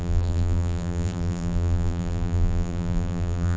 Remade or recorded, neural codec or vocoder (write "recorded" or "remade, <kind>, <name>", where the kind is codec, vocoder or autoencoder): remade, vocoder, BigVGAN v2